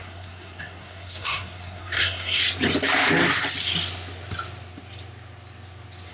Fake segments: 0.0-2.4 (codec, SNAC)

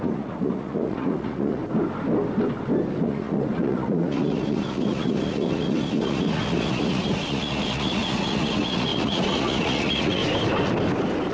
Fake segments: 0.0-1.6 (vocoder, Vocos); 3.0-10.2